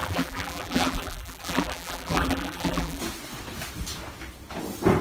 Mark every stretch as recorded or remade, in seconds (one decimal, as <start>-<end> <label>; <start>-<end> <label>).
0.0-3.0 remade; 3.0-5.0 recorded